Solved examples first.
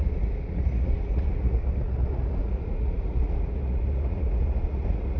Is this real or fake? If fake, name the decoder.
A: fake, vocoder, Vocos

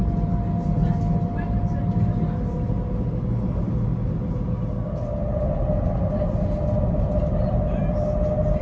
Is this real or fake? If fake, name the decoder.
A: real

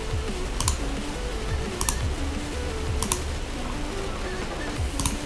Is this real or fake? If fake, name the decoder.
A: real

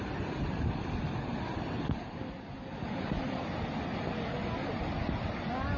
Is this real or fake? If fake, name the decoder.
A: real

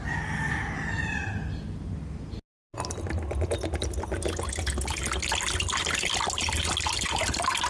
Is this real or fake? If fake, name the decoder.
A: real